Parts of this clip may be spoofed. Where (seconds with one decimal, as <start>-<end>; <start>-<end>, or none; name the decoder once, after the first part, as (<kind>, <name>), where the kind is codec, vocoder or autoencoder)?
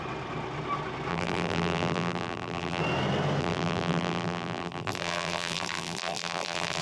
1.1-2.8 (vocoder, BigVGAN v2); 3.4-6.8